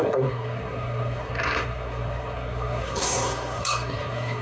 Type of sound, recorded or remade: remade